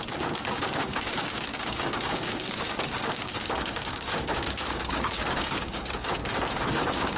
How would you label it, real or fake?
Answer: fake